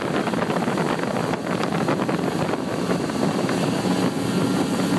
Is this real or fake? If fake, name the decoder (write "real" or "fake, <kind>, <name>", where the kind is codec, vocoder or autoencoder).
real